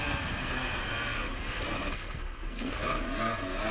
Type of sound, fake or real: fake